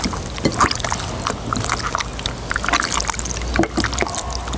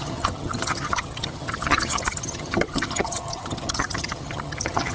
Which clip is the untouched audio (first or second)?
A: first